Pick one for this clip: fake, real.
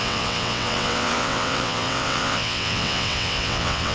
fake